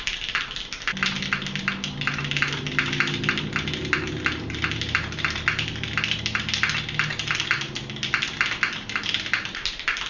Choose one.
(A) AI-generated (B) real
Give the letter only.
B